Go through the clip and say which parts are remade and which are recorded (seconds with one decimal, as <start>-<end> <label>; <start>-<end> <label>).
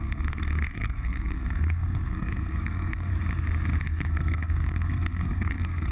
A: 0.0-3.1 remade; 3.1-3.8 recorded; 3.8-5.9 remade